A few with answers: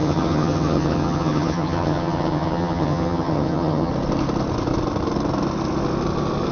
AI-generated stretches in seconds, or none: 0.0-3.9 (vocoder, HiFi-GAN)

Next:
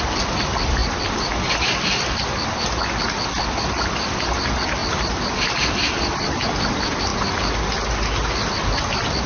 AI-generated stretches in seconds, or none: none

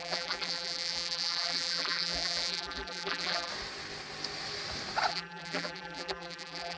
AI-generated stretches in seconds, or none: 0.0-3.5 (vocoder, BigVGAN v2); 5.1-6.8

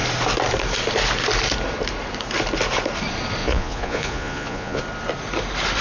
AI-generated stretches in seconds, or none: 3.4-4.8 (vocoder, Vocos)

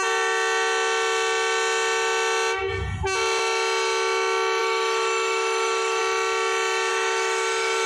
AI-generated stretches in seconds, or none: 4.6-6.0 (autoencoder, DAC-VAE); 6.9-7.9

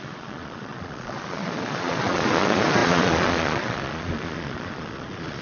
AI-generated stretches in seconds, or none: 0.0-5.4 (vocoder, Vocos)

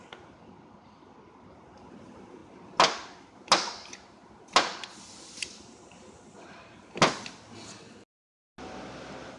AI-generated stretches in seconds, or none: none